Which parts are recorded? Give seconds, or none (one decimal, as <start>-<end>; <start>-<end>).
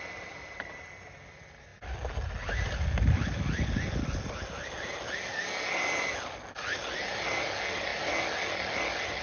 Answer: 0.0-9.2